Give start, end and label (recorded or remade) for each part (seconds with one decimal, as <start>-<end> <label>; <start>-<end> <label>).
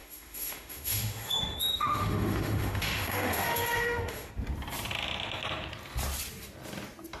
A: 0.0-4.3 remade; 4.3-7.2 recorded